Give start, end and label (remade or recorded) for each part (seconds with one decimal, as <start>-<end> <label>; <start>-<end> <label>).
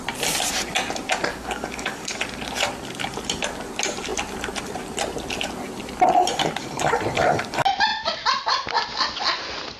0.0-1.3 recorded; 1.3-2.2 remade; 2.2-9.8 recorded